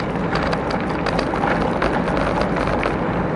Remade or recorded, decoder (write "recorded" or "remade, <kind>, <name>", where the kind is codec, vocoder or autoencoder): recorded